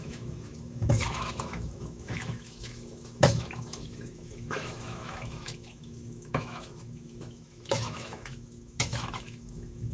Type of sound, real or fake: fake